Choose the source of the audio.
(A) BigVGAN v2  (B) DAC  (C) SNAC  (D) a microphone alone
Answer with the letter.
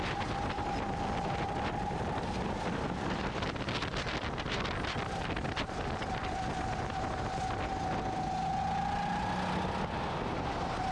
D